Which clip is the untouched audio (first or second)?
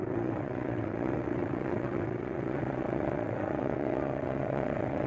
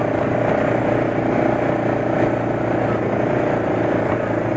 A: second